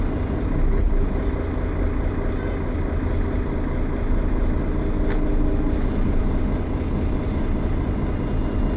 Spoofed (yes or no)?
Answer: no